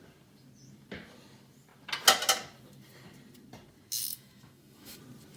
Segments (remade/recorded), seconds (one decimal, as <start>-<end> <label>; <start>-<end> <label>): 0.0-4.1 recorded; 4.1-5.0 remade; 5.0-5.4 recorded